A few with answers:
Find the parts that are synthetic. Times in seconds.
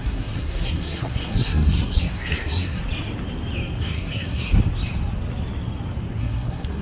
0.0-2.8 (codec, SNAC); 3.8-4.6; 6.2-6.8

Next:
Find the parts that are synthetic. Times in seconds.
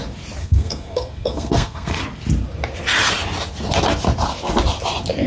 0.4-2.0 (codec, SNAC)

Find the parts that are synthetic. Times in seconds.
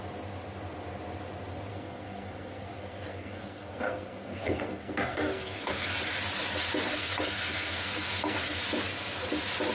1.7-5.9 (codec, SNAC); 6.9-8.6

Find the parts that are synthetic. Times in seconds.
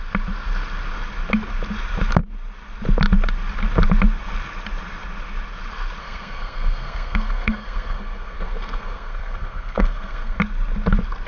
6.0-10.4 (codec, SNAC)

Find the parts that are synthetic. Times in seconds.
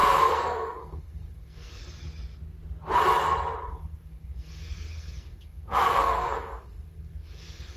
0.0-1.8 (codec, SNAC); 3.7-7.8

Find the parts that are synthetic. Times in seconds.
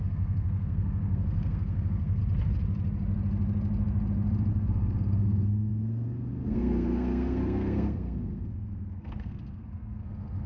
0.0-2.2 (codec, SNAC); 4.5-10.5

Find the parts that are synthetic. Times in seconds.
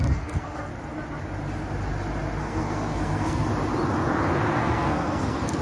0.0-0.7 (codec, SNAC); 2.4-3.5; 4.6-5.6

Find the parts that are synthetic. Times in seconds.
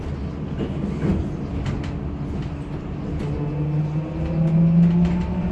none